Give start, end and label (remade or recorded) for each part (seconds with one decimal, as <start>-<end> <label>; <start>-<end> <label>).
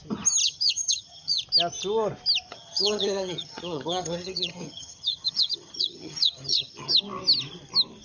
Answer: 0.0-0.4 recorded; 0.4-1.4 remade; 1.4-2.5 recorded; 2.5-6.9 remade; 6.9-8.0 recorded